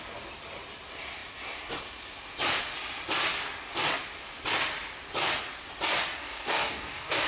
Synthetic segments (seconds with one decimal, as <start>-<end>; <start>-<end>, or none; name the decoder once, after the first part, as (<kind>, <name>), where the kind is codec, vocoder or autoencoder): 6.2-7.3 (codec, DAC)

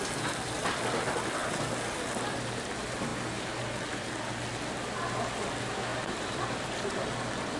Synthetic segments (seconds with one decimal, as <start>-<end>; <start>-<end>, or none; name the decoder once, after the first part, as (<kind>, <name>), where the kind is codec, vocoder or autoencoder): 5.9-6.9 (vocoder, BigVGAN v2)

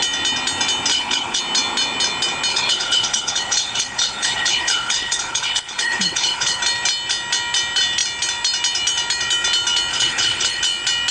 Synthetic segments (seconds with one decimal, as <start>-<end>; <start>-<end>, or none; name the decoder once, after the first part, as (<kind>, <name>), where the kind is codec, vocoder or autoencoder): 0.9-1.4 (codec, HILCodec); 2.5-6.6; 9.9-10.6

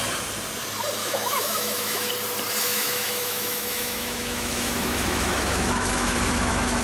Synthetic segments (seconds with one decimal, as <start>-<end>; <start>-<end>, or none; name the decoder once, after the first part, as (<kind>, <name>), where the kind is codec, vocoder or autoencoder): 1.0-2.1 (autoencoder, DAC-VAE); 2.6-6.8

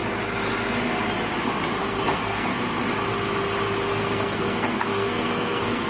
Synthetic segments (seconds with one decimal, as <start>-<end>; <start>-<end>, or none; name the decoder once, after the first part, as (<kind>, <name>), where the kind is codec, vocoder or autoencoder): 1.8-2.6 (codec, SNAC); 3.9-5.9

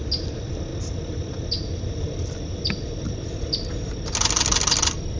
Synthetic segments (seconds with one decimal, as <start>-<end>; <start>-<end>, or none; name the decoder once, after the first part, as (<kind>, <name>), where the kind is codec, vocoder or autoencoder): none